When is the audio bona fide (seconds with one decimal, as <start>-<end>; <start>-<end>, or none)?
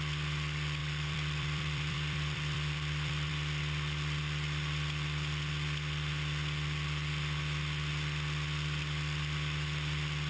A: 0.0-0.8; 3.3-10.3